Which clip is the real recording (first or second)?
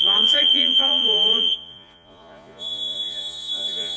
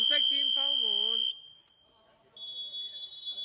second